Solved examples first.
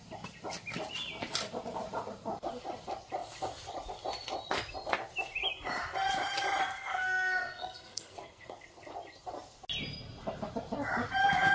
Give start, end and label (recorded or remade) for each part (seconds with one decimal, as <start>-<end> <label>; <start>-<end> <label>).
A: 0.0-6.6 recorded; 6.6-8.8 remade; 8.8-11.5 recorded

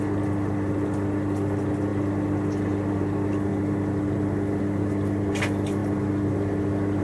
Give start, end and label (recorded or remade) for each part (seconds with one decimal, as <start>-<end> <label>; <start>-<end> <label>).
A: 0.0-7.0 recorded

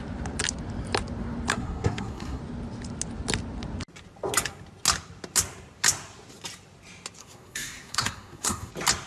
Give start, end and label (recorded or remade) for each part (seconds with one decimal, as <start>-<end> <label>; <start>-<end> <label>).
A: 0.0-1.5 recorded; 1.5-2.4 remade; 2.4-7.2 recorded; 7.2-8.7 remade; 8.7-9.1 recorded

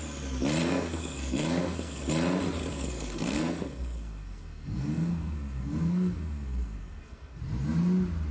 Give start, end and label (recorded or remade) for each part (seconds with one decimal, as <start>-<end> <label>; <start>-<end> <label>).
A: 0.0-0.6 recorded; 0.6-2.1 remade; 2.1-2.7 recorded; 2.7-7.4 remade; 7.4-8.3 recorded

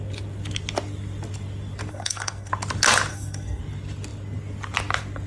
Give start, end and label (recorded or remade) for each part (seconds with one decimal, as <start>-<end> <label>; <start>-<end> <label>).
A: 0.0-1.9 recorded; 1.9-2.5 remade; 2.5-3.1 recorded; 3.1-3.6 remade; 3.6-5.3 recorded

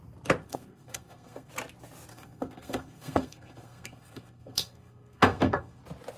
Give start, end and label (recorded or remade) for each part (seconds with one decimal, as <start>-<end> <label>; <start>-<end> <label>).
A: 0.0-0.4 recorded; 0.4-1.5 remade; 1.5-2.1 recorded; 2.1-5.8 remade; 5.8-6.2 recorded